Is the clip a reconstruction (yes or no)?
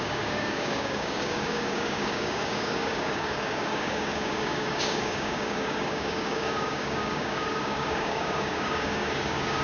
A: yes